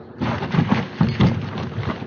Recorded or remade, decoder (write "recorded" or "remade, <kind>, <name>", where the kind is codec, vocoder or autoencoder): recorded